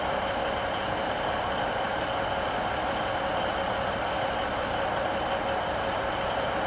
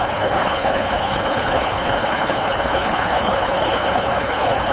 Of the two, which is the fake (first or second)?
second